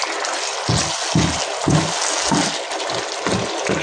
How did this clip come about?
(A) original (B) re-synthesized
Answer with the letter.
A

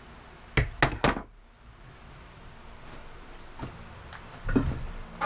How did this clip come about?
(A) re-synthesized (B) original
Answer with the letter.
B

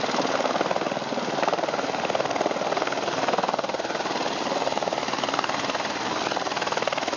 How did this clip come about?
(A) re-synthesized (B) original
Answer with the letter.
B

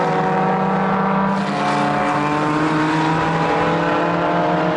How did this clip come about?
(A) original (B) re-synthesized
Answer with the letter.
A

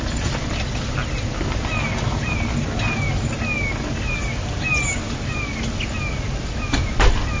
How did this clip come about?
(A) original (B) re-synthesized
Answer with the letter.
A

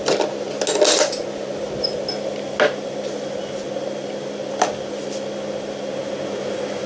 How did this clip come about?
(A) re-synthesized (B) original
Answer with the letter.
B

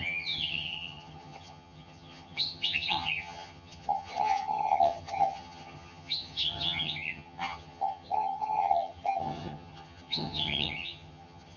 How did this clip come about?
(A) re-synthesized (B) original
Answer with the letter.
A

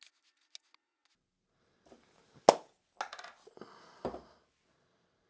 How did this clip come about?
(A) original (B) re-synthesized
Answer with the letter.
A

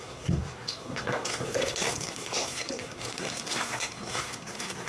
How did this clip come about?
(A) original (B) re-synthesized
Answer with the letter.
B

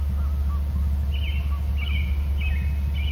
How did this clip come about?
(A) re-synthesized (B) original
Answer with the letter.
B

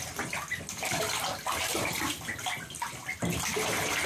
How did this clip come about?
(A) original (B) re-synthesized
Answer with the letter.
A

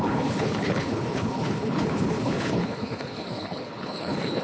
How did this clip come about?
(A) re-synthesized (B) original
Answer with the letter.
A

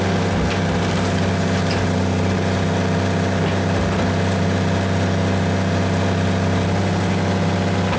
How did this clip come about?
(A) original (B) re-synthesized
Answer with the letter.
A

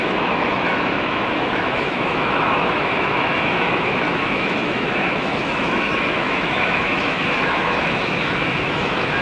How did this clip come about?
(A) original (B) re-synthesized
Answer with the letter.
B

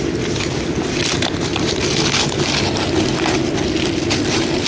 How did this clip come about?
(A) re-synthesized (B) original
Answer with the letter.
B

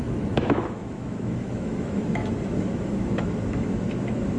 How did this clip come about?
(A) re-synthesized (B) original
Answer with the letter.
A